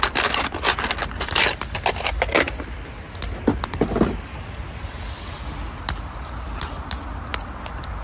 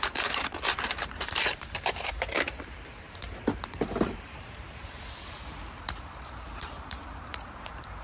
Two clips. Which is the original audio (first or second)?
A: first